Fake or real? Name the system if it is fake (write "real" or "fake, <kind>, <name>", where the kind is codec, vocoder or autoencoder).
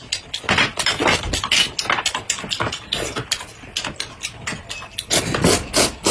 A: real